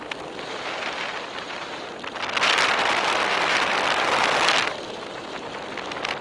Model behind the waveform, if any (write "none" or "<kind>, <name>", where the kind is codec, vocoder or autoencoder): none